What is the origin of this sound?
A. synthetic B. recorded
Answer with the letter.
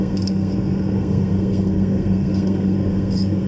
A